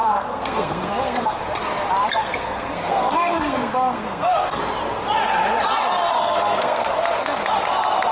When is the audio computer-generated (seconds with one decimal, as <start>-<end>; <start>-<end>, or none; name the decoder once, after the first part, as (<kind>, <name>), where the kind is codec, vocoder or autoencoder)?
0.0-1.4 (codec, SNAC); 2.1-4.6; 6.2-6.9